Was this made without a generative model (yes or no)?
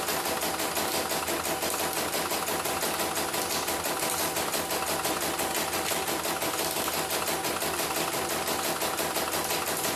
yes